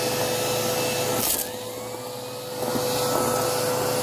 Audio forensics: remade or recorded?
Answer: recorded